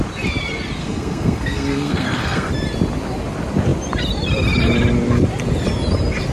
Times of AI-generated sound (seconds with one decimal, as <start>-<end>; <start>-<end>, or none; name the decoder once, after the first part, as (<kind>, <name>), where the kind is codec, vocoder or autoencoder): 0.8-2.5 (codec, SNAC)